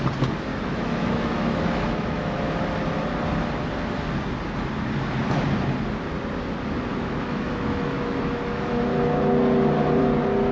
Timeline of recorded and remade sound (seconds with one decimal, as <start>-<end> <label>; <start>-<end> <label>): 0.0-0.5 recorded; 0.5-2.4 remade; 2.4-6.9 recorded; 6.9-8.8 remade; 8.8-10.5 recorded